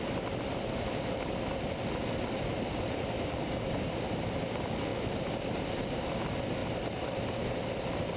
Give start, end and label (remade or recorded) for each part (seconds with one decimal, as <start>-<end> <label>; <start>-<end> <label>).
0.0-8.2 recorded